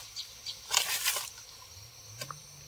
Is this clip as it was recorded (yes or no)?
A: yes